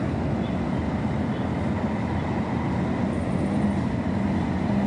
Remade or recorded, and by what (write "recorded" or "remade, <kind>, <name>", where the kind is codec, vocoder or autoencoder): recorded